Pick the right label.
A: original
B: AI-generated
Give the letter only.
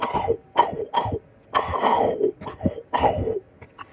B